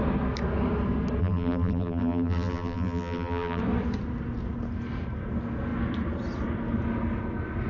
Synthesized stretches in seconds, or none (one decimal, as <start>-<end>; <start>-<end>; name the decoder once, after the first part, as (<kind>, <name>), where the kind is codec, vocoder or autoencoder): 1.2-3.6 (vocoder, BigVGAN v2)